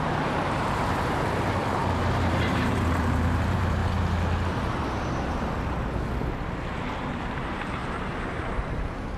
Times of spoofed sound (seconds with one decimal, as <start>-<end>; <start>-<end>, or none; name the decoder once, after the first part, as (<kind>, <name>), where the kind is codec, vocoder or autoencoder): 0.0-1.8 (vocoder, BigVGAN v2); 2.5-3.8; 7.0-9.2